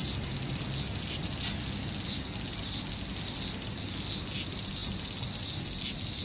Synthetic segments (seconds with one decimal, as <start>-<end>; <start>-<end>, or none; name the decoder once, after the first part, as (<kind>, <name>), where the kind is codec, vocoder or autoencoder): none